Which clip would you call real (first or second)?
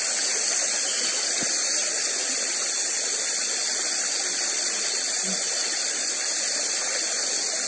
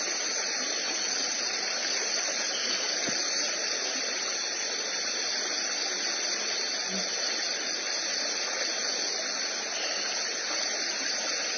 second